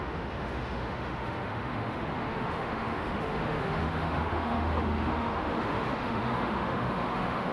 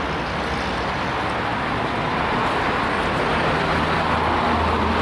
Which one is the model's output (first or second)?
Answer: first